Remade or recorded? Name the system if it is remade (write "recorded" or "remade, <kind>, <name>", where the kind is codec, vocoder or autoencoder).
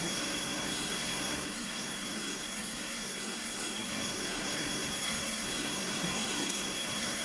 remade, codec, SNAC